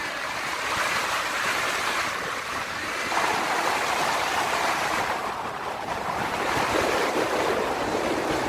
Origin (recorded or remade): remade